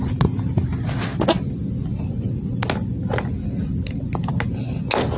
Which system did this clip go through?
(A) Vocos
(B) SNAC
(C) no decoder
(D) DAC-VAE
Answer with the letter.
C